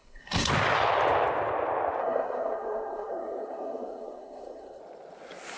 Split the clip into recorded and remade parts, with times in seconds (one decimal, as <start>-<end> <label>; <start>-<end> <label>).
0.0-0.5 remade; 0.5-2.0 recorded; 2.0-4.8 remade; 4.8-5.6 recorded